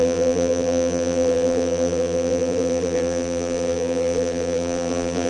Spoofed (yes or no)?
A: yes